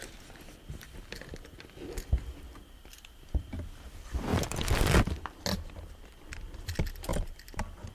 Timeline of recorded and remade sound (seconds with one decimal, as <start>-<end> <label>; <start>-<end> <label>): 0.0-7.9 recorded